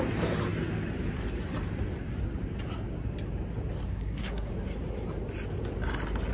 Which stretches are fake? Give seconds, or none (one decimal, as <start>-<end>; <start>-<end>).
3.9-4.5